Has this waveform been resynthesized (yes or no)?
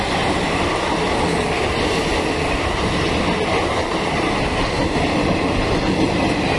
no